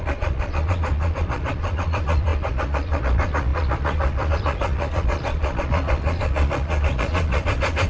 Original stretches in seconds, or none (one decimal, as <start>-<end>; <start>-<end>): none